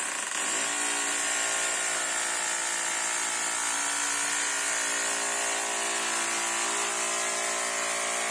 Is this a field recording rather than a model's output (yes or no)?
yes